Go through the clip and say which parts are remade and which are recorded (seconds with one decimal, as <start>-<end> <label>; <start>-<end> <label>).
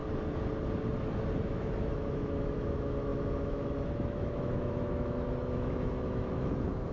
0.0-1.4 recorded; 1.4-6.9 remade